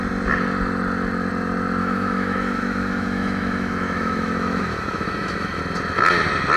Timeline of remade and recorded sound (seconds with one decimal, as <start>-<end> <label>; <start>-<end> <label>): 0.0-1.8 recorded; 1.8-5.6 remade; 5.6-6.6 recorded